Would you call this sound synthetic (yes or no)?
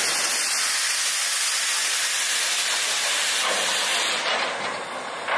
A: no